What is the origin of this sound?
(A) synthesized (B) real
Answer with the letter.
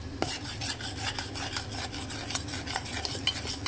B